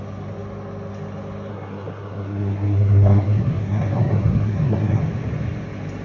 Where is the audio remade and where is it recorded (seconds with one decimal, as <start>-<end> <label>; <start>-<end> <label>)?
0.0-1.5 recorded; 1.5-5.0 remade; 5.0-6.0 recorded

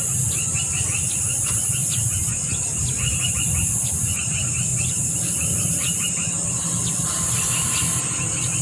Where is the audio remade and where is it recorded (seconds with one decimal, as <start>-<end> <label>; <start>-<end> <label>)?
0.0-8.6 recorded

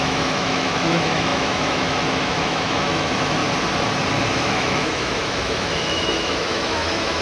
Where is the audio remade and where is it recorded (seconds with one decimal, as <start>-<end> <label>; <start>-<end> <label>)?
0.0-3.4 remade; 3.4-4.3 recorded; 4.3-7.2 remade

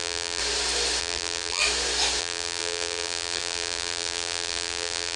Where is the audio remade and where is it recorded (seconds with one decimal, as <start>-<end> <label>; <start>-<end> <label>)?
0.0-0.4 remade; 0.4-1.0 recorded; 1.0-1.6 remade; 1.6-2.2 recorded; 2.2-5.2 remade

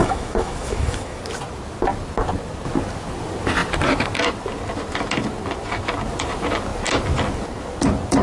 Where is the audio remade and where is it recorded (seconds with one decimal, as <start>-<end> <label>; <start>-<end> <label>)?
0.0-1.2 remade; 1.2-8.2 recorded